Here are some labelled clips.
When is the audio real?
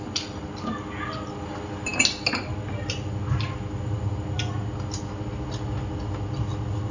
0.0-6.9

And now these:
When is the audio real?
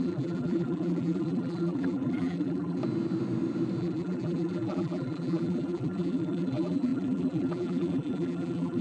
2.8-3.8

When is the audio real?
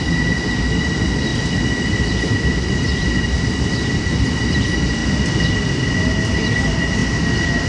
0.0-1.3; 4.0-5.0; 5.5-7.7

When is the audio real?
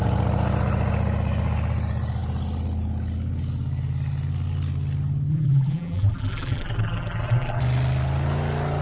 0.0-5.3; 7.6-8.8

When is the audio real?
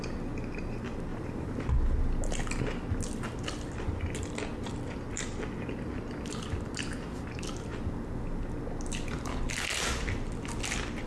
0.0-1.1; 1.7-11.1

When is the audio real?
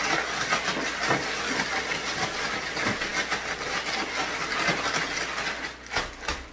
0.0-6.5